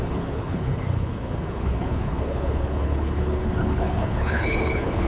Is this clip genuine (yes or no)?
no